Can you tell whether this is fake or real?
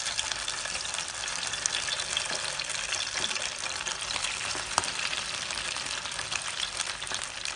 fake